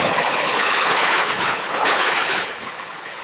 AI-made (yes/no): yes